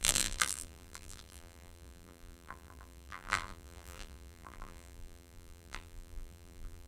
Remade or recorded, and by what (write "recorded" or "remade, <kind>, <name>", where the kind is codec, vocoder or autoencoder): remade, vocoder, BigVGAN v2